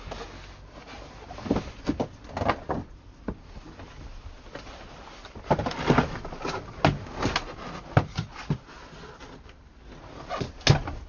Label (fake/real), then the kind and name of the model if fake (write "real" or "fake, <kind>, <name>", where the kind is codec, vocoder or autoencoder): real